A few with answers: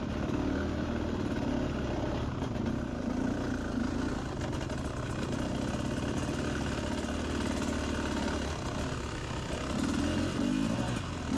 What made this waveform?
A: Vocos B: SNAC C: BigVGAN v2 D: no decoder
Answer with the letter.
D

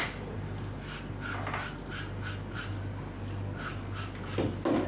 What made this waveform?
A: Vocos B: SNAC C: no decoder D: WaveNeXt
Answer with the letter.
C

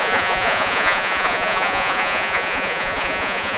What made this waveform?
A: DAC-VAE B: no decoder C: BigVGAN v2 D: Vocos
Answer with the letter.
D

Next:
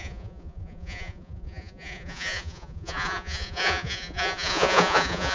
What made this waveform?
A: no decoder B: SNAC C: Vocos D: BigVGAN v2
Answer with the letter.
C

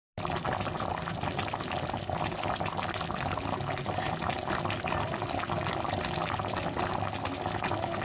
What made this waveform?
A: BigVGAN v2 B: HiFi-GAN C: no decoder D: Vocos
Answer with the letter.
C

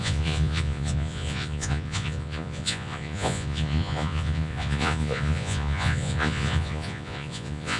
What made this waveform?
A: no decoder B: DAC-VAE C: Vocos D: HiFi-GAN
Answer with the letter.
C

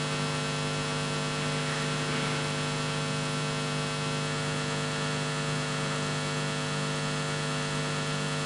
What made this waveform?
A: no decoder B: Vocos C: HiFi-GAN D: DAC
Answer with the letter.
A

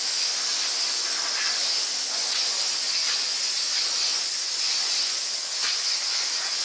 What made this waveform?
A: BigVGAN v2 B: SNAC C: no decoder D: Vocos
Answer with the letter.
D